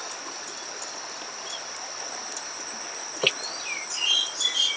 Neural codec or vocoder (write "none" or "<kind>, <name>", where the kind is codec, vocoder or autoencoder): none